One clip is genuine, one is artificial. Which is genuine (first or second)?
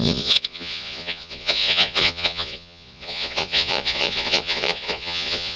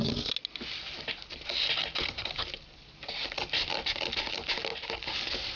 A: second